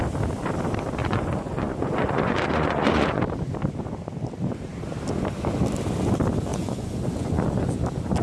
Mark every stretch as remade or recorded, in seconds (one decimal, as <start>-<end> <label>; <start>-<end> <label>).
0.0-1.0 recorded; 1.0-3.2 remade; 3.2-6.5 recorded; 6.5-7.6 remade; 7.6-8.2 recorded